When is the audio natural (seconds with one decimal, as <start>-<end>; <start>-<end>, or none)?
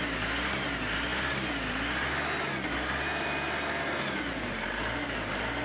0.0-5.6